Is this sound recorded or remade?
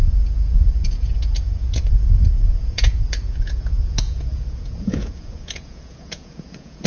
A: remade